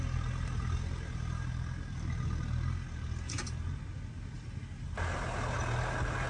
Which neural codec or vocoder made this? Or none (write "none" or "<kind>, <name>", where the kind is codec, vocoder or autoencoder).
none